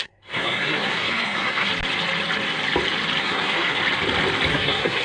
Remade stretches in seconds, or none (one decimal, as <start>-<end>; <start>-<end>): 0.0-1.7; 3.2-3.8; 4.5-5.0